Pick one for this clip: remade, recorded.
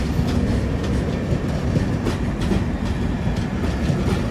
recorded